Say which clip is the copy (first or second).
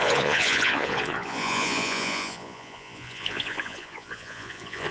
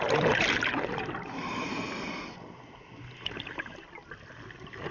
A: first